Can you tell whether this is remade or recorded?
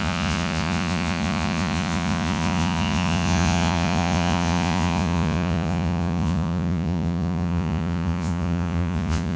remade